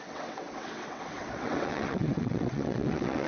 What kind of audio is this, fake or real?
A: fake